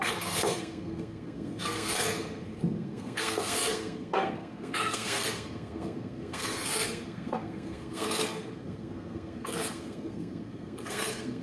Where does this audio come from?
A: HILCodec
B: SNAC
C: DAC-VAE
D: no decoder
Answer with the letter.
B